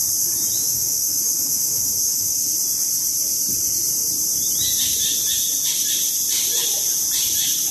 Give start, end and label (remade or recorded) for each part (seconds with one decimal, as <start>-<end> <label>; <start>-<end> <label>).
0.0-0.6 recorded; 0.6-2.5 remade; 2.5-7.7 recorded